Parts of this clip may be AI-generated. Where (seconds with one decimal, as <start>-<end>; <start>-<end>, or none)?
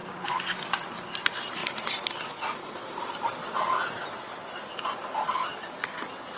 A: none